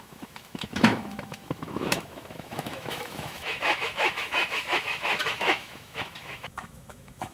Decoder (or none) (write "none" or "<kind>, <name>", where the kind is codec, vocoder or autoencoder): autoencoder, DAC-VAE